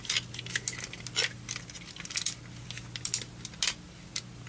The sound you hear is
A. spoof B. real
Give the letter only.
B